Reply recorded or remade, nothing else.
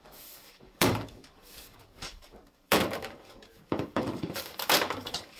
remade